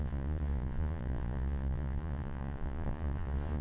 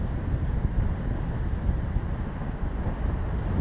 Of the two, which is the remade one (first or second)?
first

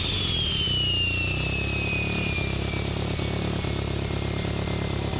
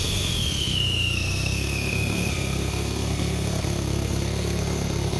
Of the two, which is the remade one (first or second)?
second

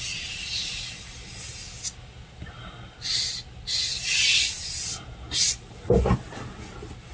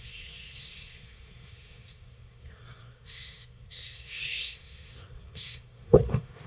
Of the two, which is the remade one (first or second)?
second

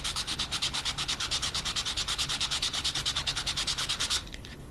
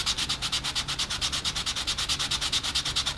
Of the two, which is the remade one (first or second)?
first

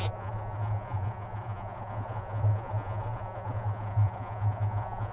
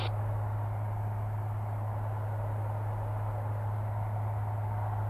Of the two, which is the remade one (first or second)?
first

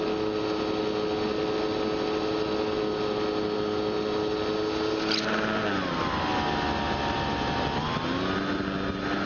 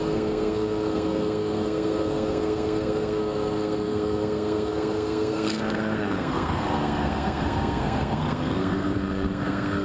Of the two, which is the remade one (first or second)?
second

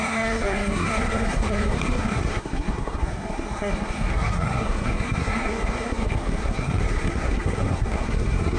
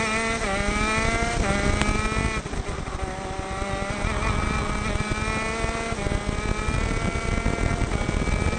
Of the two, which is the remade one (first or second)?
first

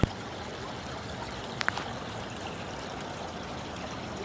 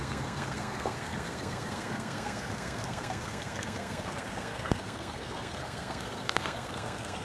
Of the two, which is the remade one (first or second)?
second